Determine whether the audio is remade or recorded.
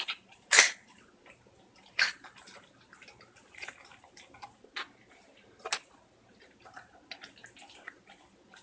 recorded